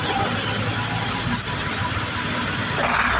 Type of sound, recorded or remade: recorded